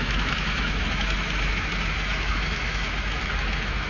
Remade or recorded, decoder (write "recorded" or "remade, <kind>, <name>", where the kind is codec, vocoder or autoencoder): remade, autoencoder, DAC-VAE